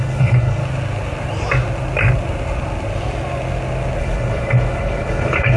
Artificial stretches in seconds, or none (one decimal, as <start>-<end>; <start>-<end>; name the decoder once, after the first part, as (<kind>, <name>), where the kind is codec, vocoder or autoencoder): 0.0-0.6 (codec, HILCodec); 4.0-5.6